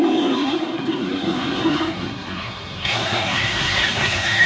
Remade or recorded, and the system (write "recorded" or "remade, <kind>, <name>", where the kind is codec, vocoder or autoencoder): remade, codec, SNAC